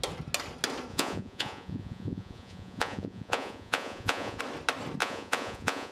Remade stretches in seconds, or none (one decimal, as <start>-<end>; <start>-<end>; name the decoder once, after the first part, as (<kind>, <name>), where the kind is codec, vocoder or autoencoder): 0.9-4.4 (vocoder, Vocos); 5.0-5.9